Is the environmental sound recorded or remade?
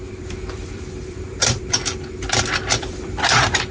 remade